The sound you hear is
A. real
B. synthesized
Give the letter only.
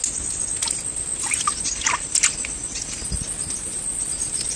A